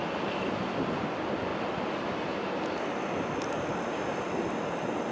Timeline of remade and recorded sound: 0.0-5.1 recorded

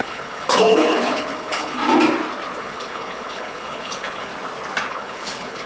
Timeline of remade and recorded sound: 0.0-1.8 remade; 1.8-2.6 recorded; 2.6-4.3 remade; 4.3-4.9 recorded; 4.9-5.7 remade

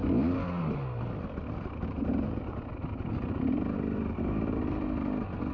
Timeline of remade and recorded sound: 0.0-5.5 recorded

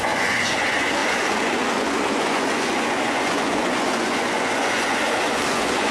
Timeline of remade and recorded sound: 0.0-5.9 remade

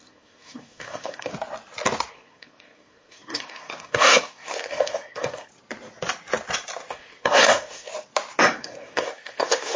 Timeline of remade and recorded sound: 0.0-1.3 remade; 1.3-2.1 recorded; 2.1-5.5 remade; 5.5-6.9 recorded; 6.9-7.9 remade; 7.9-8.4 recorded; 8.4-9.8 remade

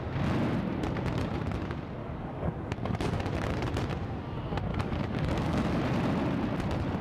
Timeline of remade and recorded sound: 0.0-2.0 recorded; 2.0-3.2 remade; 3.2-4.7 recorded; 4.7-5.8 remade; 5.8-7.0 recorded

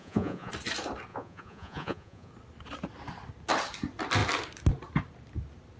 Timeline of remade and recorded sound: 0.0-0.5 remade; 0.5-1.1 recorded; 1.1-2.3 remade; 2.3-5.8 recorded

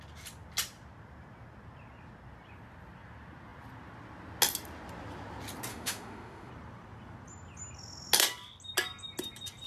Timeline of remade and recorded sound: 0.0-5.7 recorded; 5.7-6.5 remade; 6.5-9.7 recorded